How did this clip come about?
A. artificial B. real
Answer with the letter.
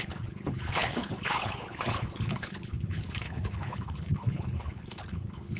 A